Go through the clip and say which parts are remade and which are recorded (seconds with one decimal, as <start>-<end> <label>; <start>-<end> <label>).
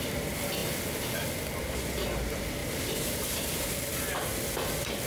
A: 0.0-2.6 recorded; 2.6-3.7 remade; 3.7-5.1 recorded